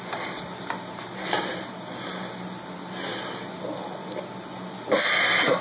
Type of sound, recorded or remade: recorded